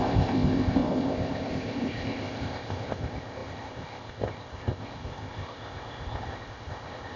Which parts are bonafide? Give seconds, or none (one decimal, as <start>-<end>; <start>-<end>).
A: none